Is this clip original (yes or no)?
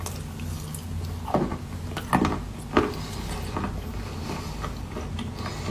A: yes